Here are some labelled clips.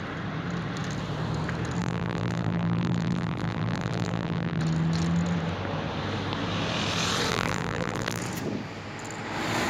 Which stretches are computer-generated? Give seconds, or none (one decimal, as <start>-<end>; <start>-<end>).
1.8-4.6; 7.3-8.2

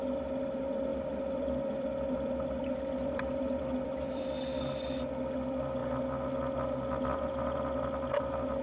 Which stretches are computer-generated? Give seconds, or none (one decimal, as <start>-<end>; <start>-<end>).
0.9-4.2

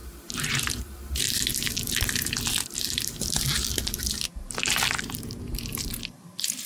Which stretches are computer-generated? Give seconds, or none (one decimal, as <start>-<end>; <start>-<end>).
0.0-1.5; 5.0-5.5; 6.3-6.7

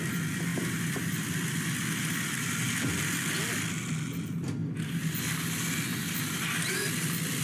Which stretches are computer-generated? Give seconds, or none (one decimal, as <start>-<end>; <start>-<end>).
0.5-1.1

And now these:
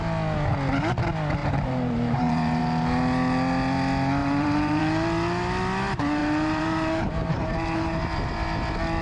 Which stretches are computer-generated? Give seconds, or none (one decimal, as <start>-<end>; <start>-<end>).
1.4-2.6; 4.2-4.8; 6.2-8.3

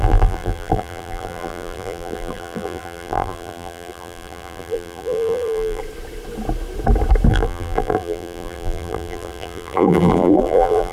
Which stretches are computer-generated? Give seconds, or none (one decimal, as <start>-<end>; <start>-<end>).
0.0-5.8; 7.3-10.9